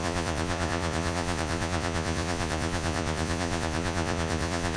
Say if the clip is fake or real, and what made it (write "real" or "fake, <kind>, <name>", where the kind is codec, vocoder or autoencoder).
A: fake, vocoder, Vocos